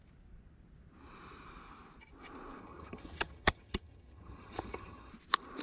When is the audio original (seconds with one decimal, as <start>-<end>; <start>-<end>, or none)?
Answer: 0.0-2.6; 5.1-5.6